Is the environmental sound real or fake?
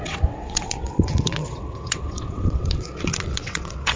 fake